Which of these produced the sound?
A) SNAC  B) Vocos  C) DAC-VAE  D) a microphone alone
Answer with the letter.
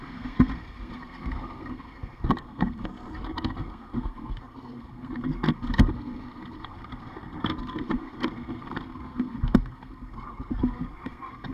A